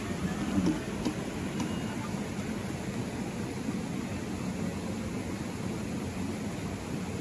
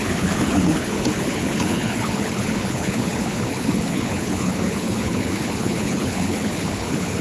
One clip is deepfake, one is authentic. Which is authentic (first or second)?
first